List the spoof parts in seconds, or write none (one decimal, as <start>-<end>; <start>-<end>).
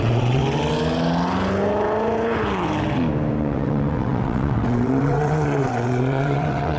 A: 0.0-0.4; 3.4-6.8